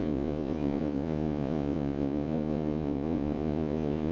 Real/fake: fake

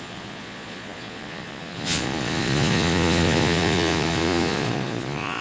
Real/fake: fake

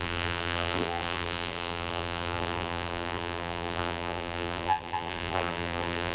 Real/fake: fake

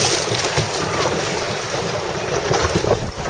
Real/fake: real